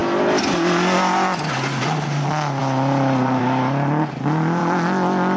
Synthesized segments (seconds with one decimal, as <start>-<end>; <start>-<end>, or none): none